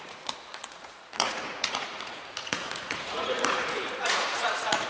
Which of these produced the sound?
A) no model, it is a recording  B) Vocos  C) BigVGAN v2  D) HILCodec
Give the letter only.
B